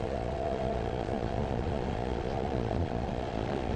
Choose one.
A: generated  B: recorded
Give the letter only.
A